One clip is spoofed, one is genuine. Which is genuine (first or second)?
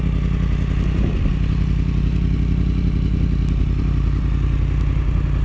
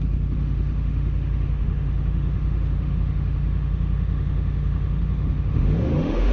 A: first